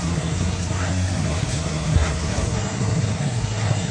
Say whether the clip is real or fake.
fake